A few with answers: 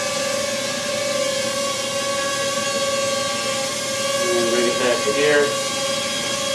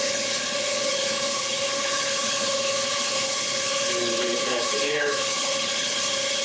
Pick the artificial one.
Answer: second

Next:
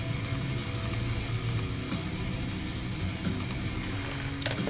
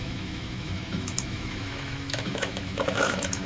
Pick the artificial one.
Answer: second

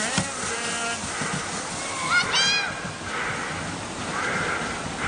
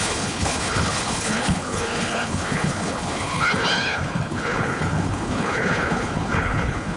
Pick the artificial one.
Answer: second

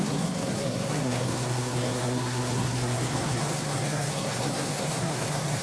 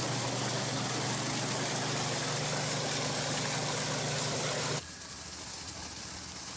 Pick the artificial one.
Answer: first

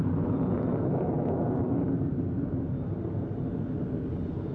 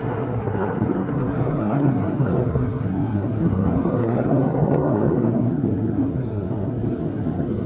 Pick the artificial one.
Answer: second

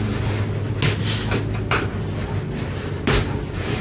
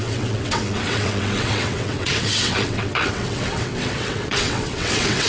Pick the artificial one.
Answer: second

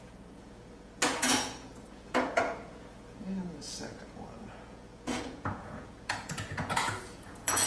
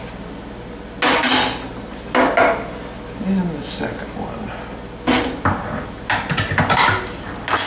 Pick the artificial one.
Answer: first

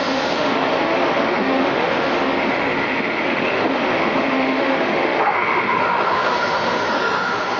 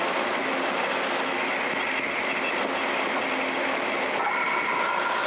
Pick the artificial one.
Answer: first